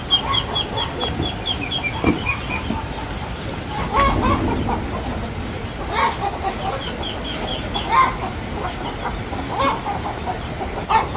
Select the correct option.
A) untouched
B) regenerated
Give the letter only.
A